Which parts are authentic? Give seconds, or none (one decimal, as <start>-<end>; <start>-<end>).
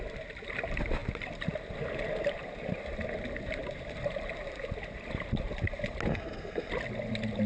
0.0-6.1; 6.7-7.5